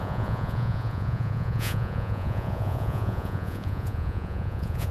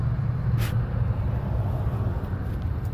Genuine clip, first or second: second